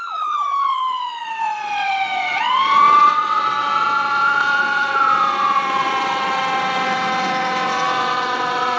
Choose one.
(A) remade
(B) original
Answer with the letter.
A